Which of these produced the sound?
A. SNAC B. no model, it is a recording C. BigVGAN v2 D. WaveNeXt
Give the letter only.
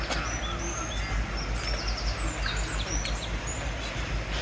B